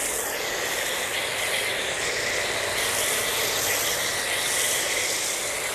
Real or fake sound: real